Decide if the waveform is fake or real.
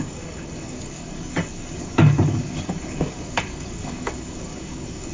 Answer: fake